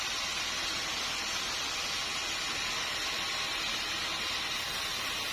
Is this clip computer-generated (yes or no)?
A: no